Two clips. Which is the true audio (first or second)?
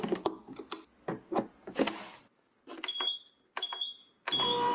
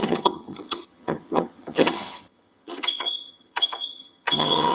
first